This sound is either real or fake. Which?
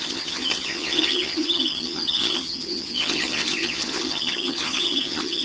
fake